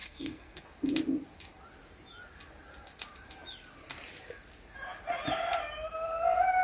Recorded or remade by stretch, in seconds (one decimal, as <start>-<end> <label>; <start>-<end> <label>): 0.0-0.6 remade; 0.6-6.6 recorded